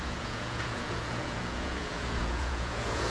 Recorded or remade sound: remade